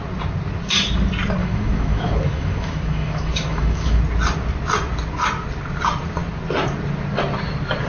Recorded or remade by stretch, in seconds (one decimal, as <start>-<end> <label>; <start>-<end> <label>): 0.0-1.4 recorded; 1.4-4.0 remade; 4.0-7.9 recorded